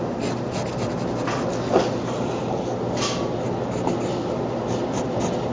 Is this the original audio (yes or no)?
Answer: yes